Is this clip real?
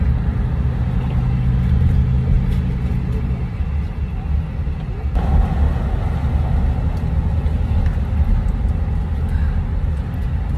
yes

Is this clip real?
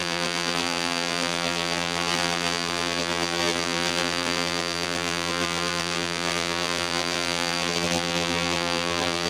no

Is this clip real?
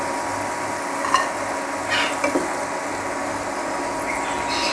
yes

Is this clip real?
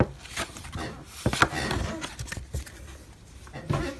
yes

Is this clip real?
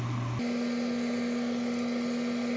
yes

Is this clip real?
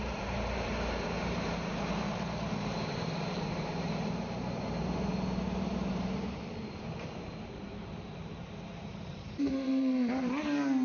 no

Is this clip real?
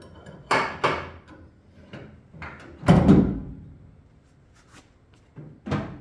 yes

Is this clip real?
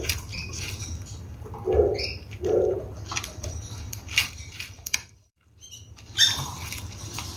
no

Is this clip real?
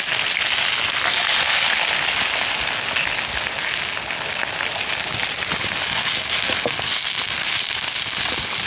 yes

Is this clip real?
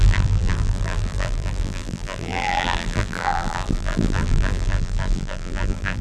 no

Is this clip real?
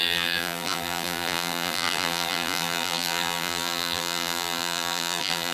no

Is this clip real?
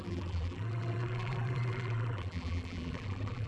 no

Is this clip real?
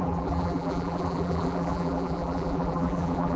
no